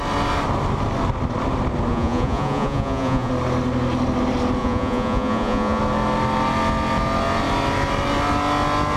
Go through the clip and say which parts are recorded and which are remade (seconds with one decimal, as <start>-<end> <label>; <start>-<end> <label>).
0.0-1.9 recorded; 1.9-3.3 remade; 3.3-4.6 recorded; 4.6-5.8 remade; 5.8-9.0 recorded